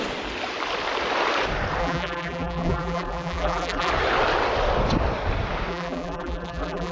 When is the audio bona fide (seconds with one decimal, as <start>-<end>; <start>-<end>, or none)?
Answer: 0.0-1.8; 3.9-5.7